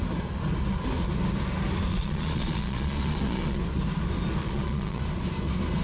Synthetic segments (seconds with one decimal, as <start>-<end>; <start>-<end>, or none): 1.9-3.6; 4.4-5.0

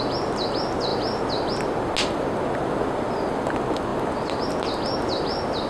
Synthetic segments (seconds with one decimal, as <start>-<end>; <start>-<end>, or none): none

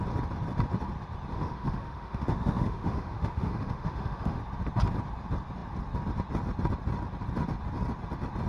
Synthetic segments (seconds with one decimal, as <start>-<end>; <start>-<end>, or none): 1.3-4.4

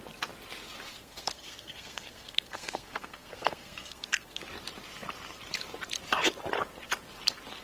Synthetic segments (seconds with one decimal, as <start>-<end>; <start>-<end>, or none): 0.9-4.4